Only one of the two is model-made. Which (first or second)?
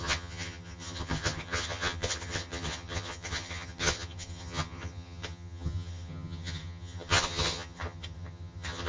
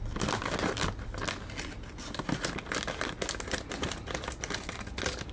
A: first